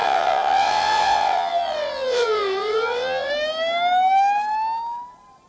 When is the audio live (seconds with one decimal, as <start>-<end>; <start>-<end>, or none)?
3.3-5.5